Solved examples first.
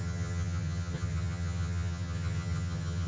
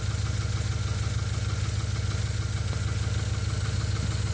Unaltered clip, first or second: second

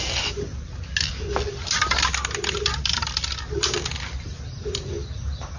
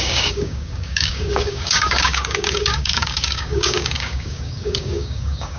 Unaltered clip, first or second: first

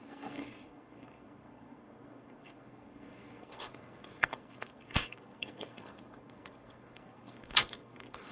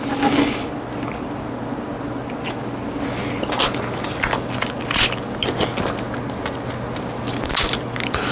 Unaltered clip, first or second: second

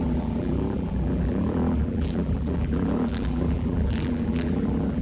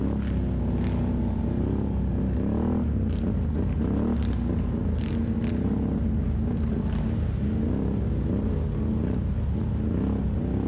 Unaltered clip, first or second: second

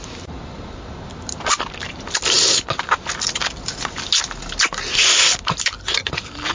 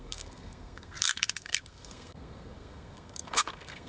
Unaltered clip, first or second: first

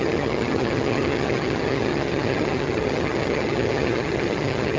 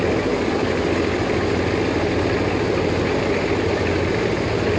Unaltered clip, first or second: second